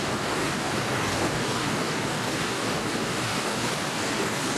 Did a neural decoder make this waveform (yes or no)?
yes